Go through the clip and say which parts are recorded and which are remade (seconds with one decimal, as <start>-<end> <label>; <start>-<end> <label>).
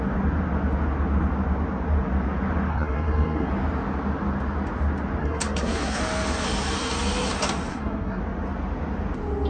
0.0-2.7 recorded; 2.7-3.5 remade; 3.5-5.2 recorded; 5.2-6.0 remade; 6.0-7.7 recorded; 7.7-8.2 remade; 8.2-9.5 recorded